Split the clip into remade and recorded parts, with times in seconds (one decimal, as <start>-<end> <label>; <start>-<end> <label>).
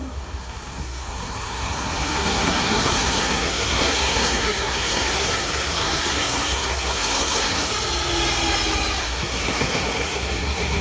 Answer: 0.0-7.7 remade; 7.7-9.0 recorded; 9.0-10.8 remade